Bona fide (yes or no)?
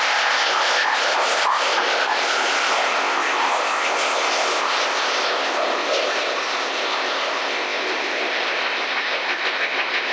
no